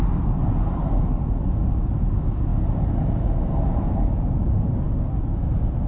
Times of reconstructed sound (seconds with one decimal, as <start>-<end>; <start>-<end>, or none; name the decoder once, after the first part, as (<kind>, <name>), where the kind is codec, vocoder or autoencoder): 4.5-5.2 (autoencoder, DAC-VAE)

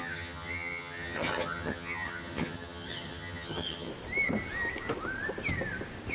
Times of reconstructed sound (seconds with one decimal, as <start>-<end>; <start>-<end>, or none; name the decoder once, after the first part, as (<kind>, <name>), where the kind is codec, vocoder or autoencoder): 0.0-3.9 (vocoder, HiFi-GAN)

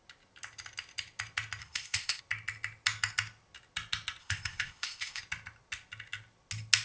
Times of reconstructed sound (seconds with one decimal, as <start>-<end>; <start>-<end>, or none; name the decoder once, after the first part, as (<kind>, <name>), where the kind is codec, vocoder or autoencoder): 1.6-2.2 (codec, ZipCodec); 4.2-5.2